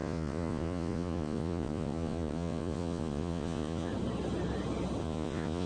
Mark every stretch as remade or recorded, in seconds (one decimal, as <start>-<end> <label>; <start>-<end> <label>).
0.0-3.9 remade; 3.9-5.0 recorded; 5.0-5.7 remade